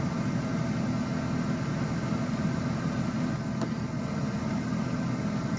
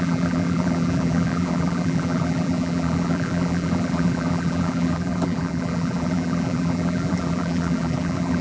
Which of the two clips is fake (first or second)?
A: second